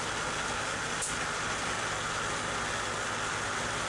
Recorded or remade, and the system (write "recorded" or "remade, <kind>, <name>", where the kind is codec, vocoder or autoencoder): recorded